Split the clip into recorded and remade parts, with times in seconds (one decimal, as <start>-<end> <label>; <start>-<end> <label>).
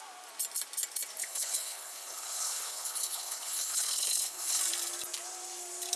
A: 0.0-1.2 recorded; 1.2-4.6 remade; 4.6-6.0 recorded